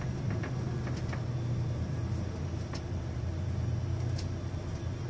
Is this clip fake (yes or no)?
no